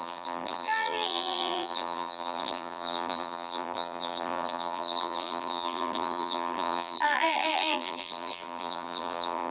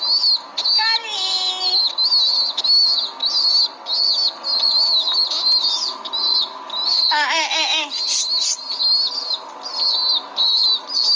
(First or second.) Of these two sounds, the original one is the second